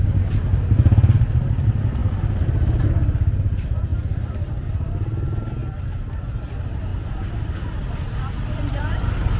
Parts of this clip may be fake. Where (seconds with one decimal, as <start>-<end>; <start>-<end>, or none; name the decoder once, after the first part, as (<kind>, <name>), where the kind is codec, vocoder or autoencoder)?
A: 3.9-4.5 (vocoder, BigVGAN v2); 5.6-6.2; 6.9-9.0